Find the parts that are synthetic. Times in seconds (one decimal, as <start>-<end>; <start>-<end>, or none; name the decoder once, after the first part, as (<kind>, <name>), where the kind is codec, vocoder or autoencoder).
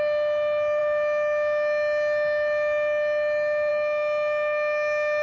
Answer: none